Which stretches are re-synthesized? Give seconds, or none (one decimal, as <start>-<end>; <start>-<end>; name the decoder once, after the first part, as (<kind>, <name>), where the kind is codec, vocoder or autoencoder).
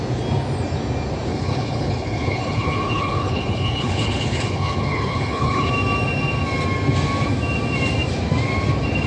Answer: 1.3-5.7 (codec, HILCodec)